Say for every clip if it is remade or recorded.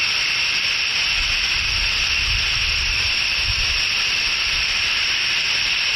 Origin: recorded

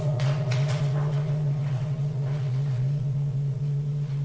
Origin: remade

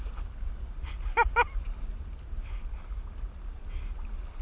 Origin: recorded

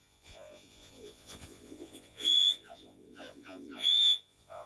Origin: remade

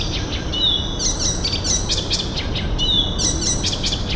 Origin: recorded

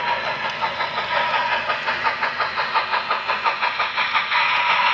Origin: remade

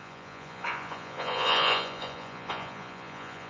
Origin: remade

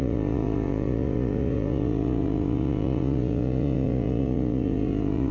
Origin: remade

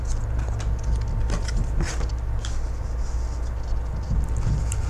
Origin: recorded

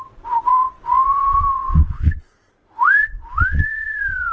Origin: remade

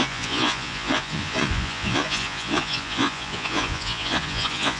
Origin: remade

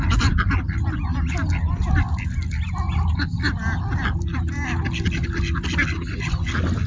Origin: recorded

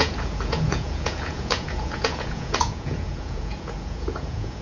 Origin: remade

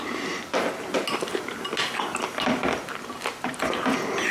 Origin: recorded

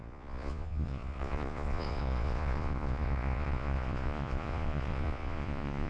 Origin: remade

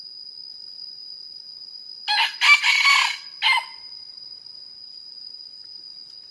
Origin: recorded